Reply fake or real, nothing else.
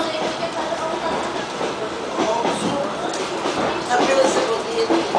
real